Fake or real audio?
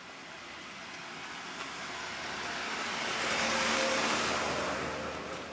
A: real